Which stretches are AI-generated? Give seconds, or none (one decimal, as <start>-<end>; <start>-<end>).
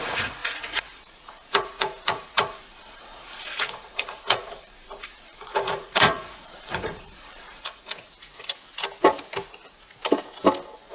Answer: 0.0-7.9